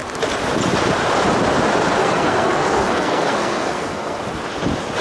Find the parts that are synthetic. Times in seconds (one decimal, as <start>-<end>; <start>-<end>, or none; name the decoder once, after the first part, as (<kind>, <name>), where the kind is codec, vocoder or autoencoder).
2.0-4.2 (codec, SNAC)